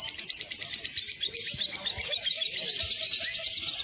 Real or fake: real